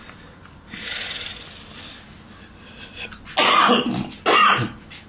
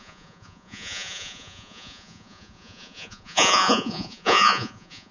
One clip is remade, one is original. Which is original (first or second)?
first